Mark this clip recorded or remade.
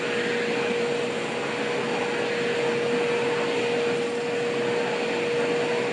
recorded